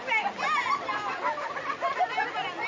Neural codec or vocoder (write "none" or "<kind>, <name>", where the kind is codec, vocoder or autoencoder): none